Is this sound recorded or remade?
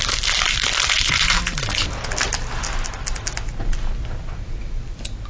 recorded